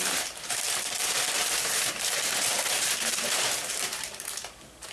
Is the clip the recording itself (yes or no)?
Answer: no